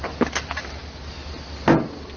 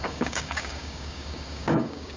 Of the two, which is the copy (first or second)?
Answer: second